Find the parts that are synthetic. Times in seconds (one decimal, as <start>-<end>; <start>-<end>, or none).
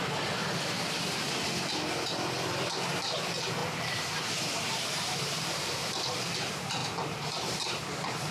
0.4-1.3; 3.6-5.9